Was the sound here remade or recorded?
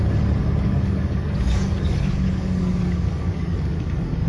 remade